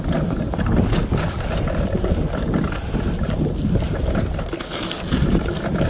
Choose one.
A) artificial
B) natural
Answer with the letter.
B